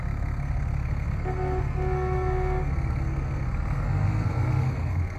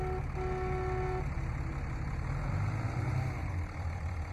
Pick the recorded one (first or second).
second